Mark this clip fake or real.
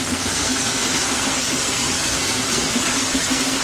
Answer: fake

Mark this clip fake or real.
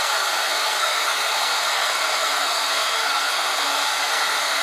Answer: fake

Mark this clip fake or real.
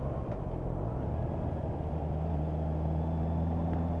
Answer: real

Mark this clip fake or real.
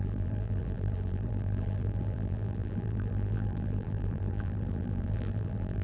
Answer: fake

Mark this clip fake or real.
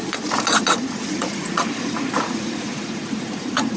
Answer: fake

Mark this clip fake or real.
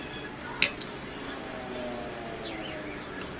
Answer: real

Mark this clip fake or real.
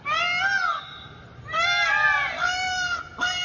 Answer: real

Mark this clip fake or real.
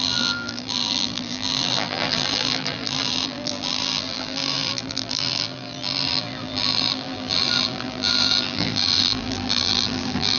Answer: fake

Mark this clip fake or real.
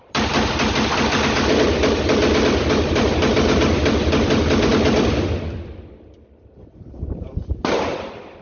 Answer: fake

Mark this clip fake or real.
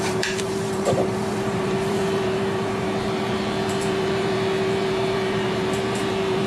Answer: fake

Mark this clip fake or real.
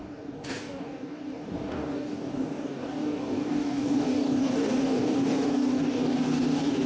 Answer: fake